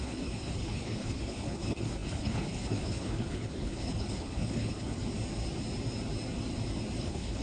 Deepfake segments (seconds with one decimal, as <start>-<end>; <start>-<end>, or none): 0.0-5.0; 7.0-7.4

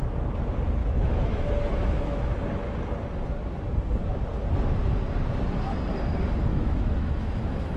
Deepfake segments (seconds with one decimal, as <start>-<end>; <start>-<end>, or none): 0.8-2.3; 6.5-7.8

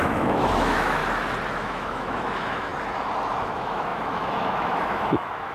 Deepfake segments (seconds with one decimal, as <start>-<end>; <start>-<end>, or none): 0.0-1.0; 1.5-2.7; 3.4-5.5

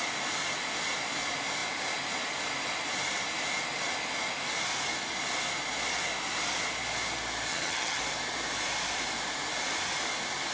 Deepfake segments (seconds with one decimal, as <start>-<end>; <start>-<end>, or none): 7.5-8.0

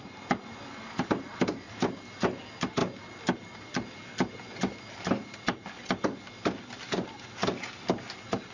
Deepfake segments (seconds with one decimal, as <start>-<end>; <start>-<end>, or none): none

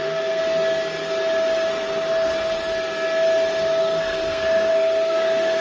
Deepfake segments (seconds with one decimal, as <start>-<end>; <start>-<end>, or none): 0.0-0.4; 3.8-5.6